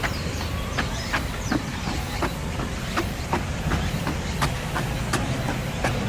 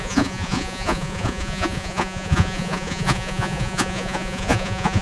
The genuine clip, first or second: first